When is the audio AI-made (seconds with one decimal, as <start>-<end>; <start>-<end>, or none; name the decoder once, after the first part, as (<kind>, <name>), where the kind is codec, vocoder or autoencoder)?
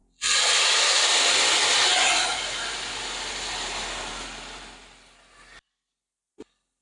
none